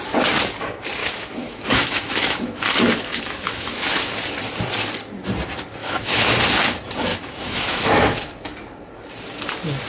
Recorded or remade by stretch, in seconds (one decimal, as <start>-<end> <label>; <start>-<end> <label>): 0.0-1.0 recorded; 1.0-4.1 remade; 4.1-5.8 recorded; 5.8-6.4 remade; 6.4-7.1 recorded; 7.1-8.3 remade; 8.3-9.9 recorded